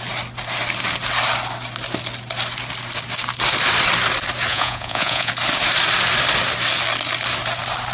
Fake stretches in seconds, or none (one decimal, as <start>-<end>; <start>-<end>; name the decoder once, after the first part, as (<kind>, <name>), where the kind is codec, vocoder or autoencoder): 4.5-5.3 (vocoder, Vocos)